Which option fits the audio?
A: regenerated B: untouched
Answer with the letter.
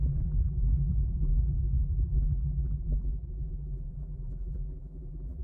A